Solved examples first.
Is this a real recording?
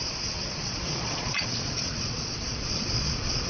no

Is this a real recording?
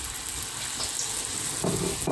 yes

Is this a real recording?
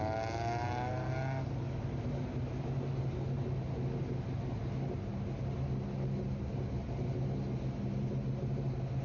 yes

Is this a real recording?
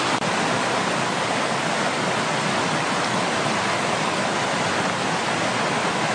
yes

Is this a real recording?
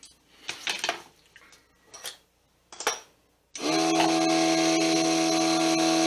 yes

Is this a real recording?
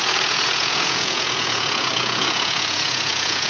no